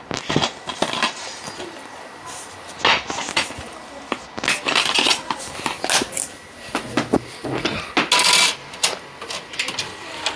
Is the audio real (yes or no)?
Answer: yes